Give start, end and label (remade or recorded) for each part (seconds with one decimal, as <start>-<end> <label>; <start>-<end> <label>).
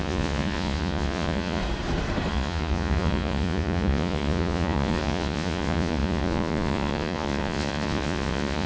0.0-1.6 remade; 1.6-2.3 recorded; 2.3-8.7 remade